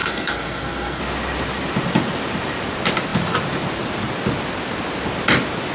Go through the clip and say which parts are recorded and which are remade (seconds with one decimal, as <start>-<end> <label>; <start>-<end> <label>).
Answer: 0.0-1.0 remade; 1.0-5.7 recorded